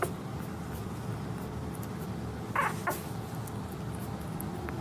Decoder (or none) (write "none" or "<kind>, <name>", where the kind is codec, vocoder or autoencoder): none